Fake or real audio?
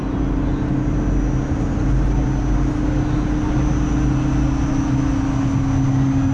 real